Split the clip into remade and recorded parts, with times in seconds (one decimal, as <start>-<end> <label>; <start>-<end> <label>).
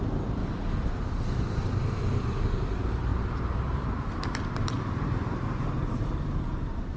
0.0-0.4 remade; 0.4-1.0 recorded; 1.0-7.0 remade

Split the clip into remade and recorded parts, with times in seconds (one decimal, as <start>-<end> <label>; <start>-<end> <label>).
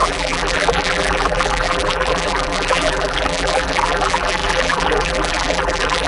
0.0-6.1 remade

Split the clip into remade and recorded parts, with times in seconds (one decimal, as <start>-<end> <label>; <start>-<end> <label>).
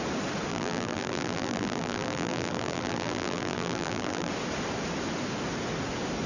0.0-0.5 recorded; 0.5-4.3 remade; 4.3-6.3 recorded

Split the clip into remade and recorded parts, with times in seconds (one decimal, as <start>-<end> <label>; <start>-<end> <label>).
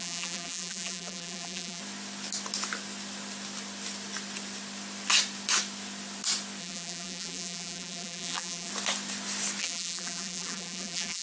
0.0-1.8 remade; 1.8-6.6 recorded; 6.6-8.7 remade; 8.7-9.6 recorded; 9.6-11.2 remade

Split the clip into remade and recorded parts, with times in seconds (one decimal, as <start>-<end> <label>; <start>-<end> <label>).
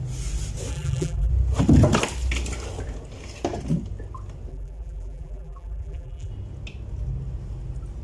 0.0-0.7 recorded; 0.7-1.3 remade; 1.3-4.5 recorded; 4.5-6.3 remade; 6.3-8.0 recorded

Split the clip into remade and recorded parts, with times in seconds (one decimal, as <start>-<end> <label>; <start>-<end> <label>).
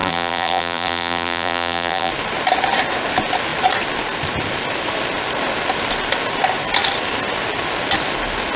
0.0-2.1 remade; 2.1-8.6 recorded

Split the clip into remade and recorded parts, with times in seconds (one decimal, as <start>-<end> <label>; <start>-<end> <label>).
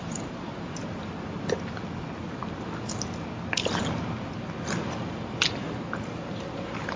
0.0-0.8 remade; 0.8-4.8 recorded; 4.8-7.0 remade